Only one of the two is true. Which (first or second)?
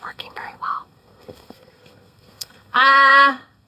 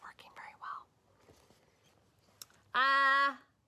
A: second